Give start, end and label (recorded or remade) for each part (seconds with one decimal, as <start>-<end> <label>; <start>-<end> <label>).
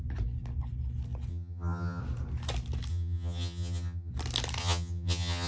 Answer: 0.0-1.3 recorded; 1.3-2.0 remade; 2.0-2.9 recorded; 2.9-4.1 remade; 4.1-4.6 recorded; 4.6-5.5 remade